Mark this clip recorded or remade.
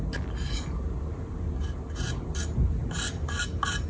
recorded